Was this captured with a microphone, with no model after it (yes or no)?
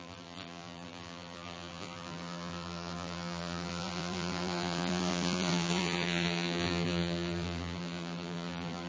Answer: no